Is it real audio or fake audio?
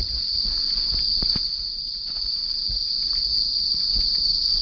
real